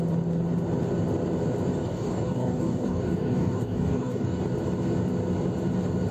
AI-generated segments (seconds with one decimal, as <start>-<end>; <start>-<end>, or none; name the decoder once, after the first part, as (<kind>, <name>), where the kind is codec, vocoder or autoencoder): 1.8-4.4 (codec, DAC)